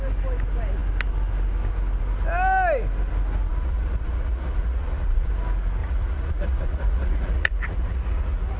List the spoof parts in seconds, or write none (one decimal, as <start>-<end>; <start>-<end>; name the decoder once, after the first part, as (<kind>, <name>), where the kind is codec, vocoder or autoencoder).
3.5-5.3 (vocoder, Vocos); 5.8-8.6

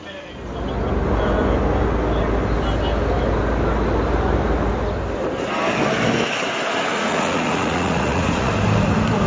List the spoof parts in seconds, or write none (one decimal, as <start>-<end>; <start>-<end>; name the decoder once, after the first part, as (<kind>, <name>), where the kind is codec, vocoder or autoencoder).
6.9-8.5 (vocoder, Vocos)

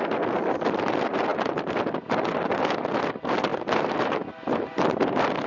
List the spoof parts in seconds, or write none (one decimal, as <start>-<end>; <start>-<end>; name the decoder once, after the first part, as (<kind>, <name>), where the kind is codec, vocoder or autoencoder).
none

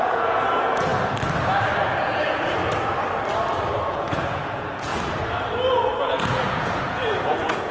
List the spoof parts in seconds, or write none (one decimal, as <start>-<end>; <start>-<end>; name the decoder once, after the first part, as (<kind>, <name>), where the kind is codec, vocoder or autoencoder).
0.0-0.9 (vocoder, Vocos); 2.0-2.6; 3.9-4.9; 6.0-7.7